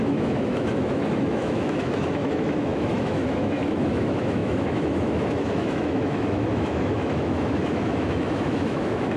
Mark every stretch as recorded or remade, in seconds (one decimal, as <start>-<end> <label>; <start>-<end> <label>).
0.0-9.2 remade